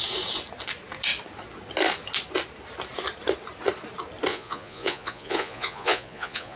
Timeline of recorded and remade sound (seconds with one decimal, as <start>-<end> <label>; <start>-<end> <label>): 0.0-4.3 recorded; 4.3-6.6 remade